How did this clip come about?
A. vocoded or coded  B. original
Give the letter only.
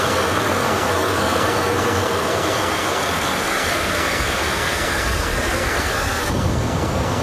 A